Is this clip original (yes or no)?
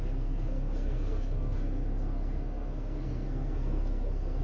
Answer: no